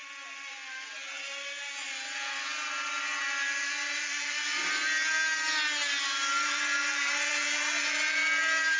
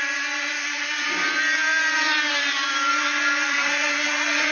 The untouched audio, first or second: first